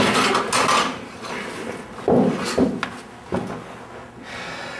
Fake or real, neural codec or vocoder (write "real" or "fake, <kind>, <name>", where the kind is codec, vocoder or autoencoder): real